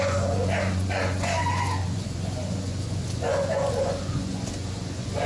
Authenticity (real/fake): fake